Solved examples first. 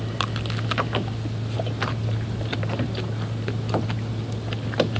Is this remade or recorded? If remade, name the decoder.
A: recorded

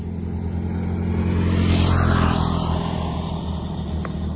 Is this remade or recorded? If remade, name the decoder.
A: recorded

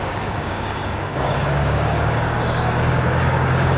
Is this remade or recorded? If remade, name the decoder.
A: remade, codec, DAC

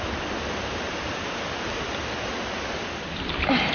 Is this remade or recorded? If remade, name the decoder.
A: recorded